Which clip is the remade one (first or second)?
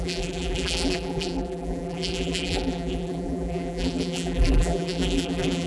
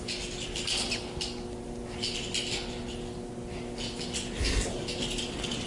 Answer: first